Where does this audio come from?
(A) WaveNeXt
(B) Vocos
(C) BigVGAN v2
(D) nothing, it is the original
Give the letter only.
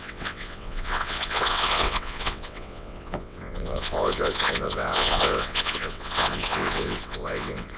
A